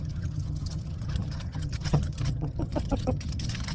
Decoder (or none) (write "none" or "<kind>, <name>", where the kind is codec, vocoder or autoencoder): vocoder, HiFi-GAN